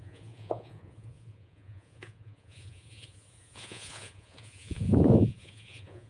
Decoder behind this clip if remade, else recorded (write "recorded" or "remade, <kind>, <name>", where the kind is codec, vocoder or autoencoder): remade, vocoder, Vocos